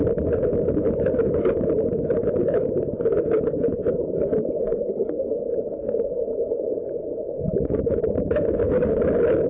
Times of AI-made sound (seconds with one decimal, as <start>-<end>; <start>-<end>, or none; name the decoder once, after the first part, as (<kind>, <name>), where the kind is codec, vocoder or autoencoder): 8.0-9.0 (vocoder, BigVGAN v2)